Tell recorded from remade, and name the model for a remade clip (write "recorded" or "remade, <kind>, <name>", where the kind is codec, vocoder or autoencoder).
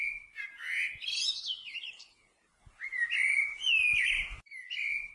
recorded